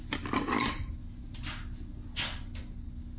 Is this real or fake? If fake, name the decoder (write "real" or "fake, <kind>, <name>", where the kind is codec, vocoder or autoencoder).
real